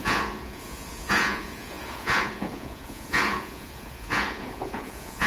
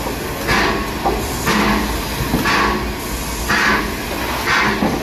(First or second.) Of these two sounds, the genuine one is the second